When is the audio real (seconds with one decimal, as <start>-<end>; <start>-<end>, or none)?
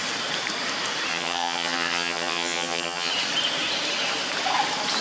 0.0-1.1; 3.1-5.0